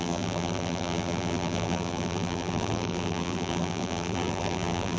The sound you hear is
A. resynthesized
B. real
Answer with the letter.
A